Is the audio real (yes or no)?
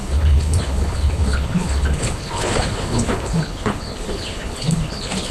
no